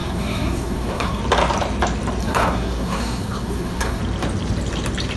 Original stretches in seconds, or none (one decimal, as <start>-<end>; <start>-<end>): 1.2-2.2; 4.0-5.2